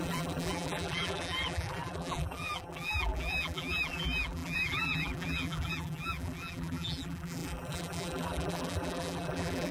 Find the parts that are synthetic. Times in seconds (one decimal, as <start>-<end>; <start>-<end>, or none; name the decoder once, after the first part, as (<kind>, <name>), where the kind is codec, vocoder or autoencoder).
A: 0.0-9.7 (vocoder, BigVGAN v2)